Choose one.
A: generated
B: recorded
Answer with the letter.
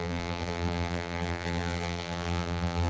A